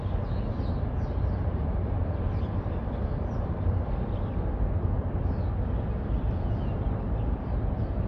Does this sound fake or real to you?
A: real